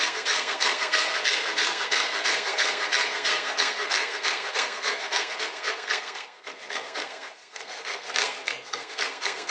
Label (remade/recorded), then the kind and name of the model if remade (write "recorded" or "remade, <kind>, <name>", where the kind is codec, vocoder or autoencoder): remade, codec, SNAC